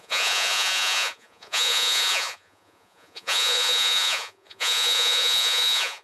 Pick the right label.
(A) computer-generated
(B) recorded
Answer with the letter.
A